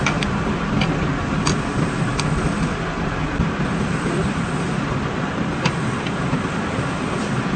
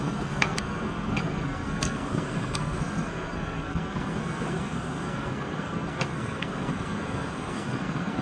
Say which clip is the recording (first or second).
first